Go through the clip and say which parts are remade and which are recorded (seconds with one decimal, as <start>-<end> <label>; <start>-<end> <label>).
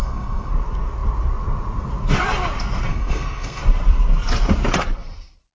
0.0-0.5 remade; 0.5-2.9 recorded; 2.9-3.6 remade; 3.6-5.6 recorded